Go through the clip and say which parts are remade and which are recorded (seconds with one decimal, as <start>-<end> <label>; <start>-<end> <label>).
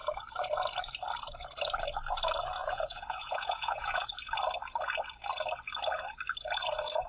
0.0-2.6 recorded; 2.6-4.1 remade; 4.1-7.1 recorded